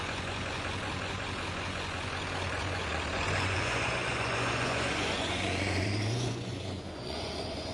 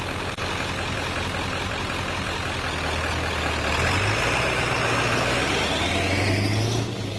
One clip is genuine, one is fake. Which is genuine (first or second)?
second